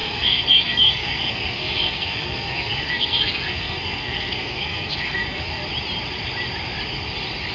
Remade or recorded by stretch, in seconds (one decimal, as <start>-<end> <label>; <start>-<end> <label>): 0.0-5.6 remade; 5.6-7.5 recorded

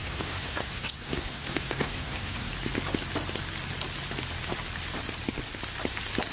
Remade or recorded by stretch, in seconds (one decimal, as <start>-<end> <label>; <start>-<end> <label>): 0.0-2.5 remade; 2.5-6.3 recorded